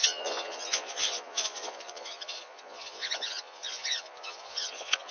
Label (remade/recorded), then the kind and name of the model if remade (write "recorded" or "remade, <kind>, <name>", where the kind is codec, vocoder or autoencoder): remade, vocoder, Vocos